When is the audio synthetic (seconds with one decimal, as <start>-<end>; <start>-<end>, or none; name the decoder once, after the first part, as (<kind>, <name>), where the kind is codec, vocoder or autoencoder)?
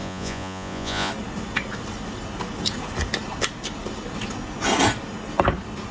0.0-1.1 (vocoder, Vocos)